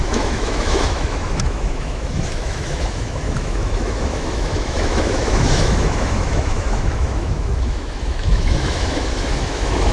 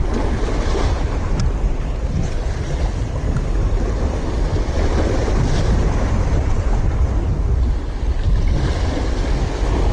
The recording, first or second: second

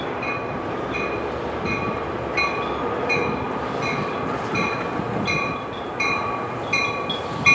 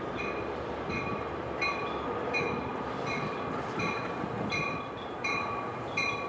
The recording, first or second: first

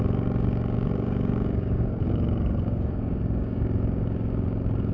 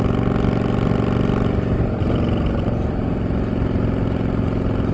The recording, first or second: second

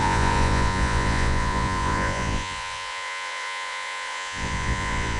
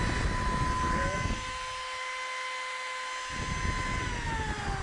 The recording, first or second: second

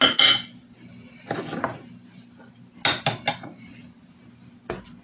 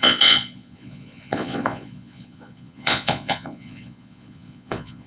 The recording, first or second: first